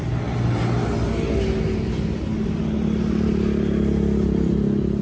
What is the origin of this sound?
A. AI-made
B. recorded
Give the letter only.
B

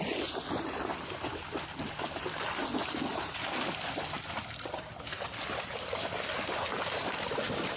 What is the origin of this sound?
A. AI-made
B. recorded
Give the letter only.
B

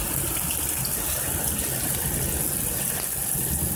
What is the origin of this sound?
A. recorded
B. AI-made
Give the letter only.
A